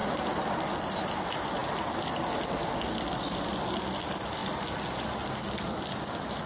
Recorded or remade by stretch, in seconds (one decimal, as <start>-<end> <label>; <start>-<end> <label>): 0.0-6.5 recorded